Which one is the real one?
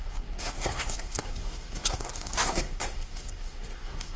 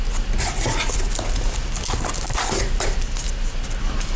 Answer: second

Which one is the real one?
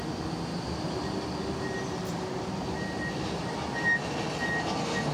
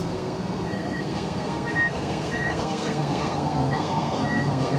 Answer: first